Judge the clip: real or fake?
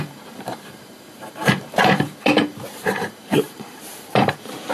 fake